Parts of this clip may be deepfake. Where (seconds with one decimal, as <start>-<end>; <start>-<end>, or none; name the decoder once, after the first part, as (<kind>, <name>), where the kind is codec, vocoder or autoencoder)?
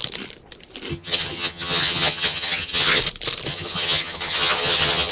0.9-3.0 (vocoder, HiFi-GAN); 3.5-5.1